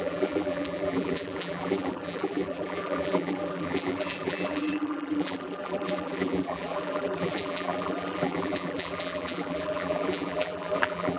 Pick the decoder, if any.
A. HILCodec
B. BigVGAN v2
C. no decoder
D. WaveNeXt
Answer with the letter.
B